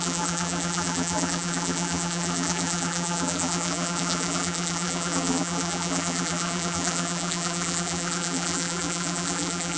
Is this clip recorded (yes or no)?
no